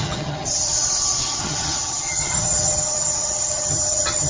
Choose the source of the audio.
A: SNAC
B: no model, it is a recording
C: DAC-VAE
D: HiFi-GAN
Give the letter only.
D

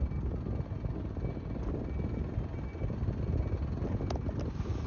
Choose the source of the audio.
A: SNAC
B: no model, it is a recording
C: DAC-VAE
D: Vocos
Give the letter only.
B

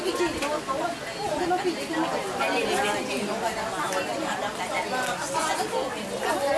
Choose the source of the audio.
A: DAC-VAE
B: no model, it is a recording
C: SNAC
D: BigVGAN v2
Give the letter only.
B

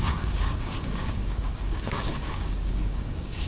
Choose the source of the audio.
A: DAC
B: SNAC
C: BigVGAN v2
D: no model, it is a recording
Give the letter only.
A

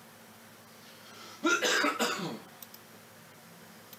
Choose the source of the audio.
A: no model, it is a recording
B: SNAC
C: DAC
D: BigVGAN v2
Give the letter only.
A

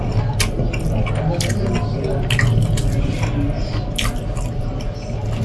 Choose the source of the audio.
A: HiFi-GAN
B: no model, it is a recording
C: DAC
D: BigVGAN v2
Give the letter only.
B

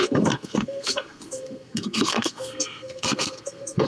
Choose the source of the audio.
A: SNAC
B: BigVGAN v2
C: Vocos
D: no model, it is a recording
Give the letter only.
A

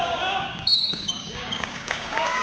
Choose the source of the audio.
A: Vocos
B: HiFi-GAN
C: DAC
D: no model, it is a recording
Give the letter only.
C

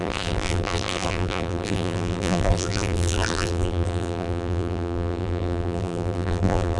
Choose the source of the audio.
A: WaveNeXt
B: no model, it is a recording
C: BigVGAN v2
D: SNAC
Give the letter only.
C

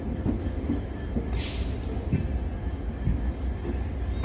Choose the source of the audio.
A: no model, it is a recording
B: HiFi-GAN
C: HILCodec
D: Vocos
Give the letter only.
A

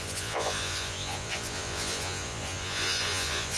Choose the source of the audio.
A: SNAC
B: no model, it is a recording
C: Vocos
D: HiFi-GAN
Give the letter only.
C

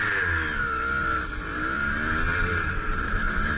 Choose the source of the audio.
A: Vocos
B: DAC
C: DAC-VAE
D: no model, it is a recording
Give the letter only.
D